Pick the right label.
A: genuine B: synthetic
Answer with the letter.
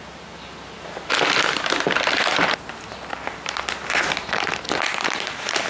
A